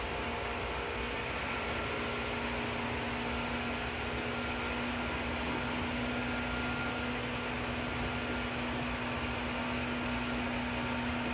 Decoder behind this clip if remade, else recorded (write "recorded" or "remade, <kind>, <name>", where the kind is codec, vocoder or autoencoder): recorded